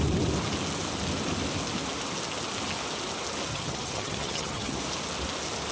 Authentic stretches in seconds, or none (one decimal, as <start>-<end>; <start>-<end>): 0.0-3.5; 4.8-5.7